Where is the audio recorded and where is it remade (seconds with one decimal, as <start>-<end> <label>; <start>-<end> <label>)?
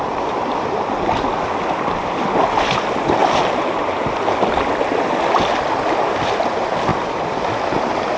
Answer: 0.0-8.2 recorded